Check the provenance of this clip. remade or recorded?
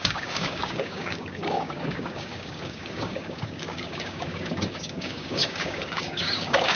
remade